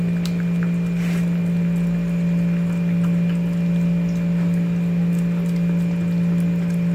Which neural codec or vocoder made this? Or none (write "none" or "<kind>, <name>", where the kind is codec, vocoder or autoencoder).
none